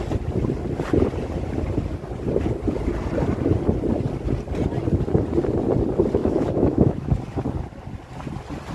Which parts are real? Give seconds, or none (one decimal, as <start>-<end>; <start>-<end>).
0.0-6.2; 7.1-8.7